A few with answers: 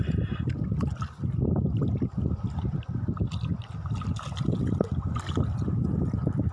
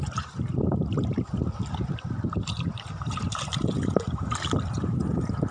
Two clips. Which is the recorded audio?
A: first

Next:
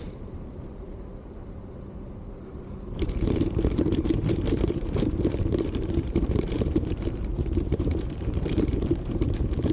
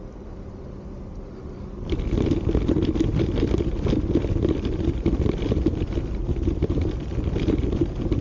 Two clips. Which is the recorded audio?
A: second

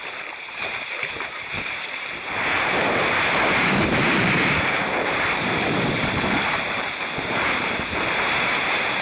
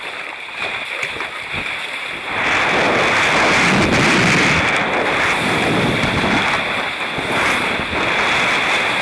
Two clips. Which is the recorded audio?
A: second